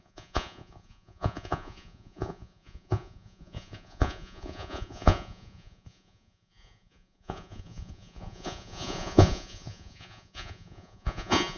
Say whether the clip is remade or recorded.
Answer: remade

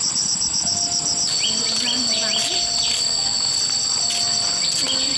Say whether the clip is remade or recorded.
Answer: recorded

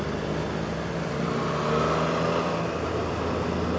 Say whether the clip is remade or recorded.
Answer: recorded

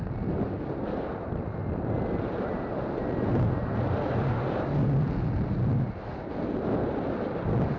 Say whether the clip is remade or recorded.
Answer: recorded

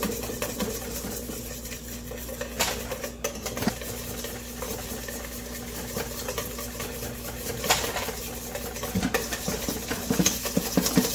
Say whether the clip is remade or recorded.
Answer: recorded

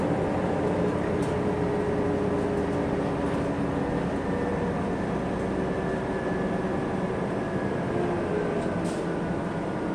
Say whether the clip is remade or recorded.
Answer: recorded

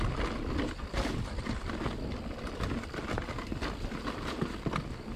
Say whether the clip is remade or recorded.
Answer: recorded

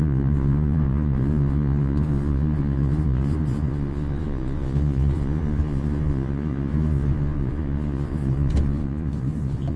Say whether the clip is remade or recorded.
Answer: remade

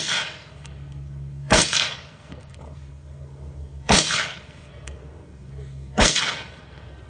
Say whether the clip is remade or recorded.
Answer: remade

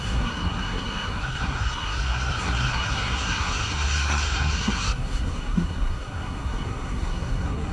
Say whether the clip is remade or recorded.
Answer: remade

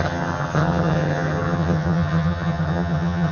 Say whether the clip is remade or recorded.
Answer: remade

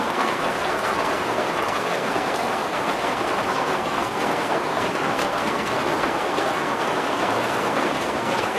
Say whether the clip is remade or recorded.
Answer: remade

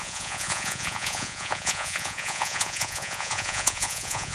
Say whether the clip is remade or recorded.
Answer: remade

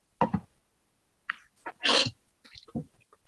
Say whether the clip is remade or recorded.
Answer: recorded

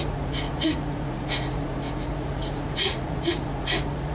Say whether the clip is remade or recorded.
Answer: remade